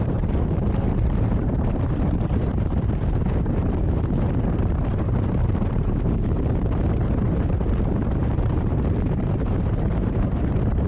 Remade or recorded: remade